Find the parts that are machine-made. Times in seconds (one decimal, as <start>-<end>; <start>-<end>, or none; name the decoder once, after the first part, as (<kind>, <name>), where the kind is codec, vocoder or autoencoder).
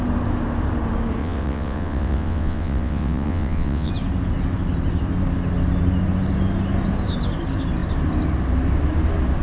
1.2-3.9 (vocoder, WaveNeXt)